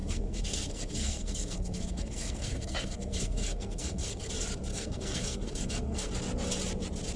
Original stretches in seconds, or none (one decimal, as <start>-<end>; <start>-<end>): 4.3-4.7; 6.1-7.2